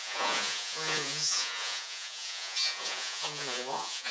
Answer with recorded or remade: remade